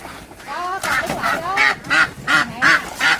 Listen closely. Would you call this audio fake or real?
real